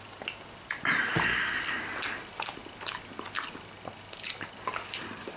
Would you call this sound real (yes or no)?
yes